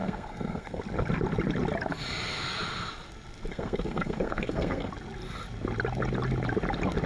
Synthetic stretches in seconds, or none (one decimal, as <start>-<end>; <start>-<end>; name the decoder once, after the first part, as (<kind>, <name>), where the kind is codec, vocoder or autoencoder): 0.0-0.8 (codec, SNAC); 3.5-4.9